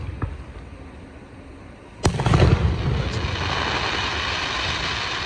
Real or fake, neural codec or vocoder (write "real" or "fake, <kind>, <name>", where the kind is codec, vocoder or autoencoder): real